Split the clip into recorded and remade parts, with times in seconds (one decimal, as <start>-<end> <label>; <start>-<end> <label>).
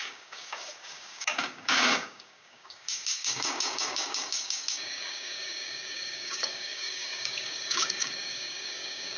0.0-9.2 remade